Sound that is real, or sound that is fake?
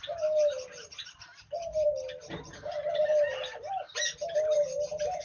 real